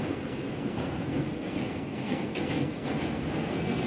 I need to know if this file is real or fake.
fake